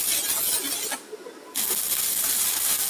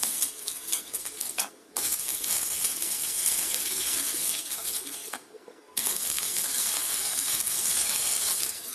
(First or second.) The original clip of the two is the first